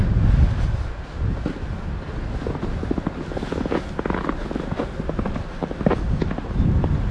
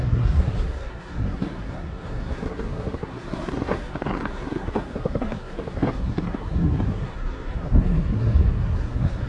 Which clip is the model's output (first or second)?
second